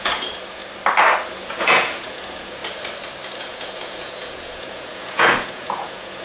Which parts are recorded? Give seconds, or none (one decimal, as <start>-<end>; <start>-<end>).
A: 0.6-1.3; 2.6-3.4

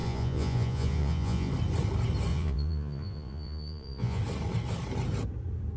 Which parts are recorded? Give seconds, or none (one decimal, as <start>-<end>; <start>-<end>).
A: 1.5-2.3; 4.2-5.8

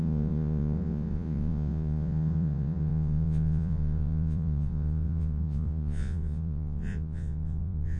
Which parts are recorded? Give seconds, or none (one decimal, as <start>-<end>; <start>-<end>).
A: none

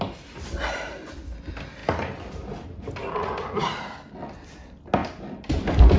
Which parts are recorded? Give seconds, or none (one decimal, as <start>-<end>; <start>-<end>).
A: 0.0-6.0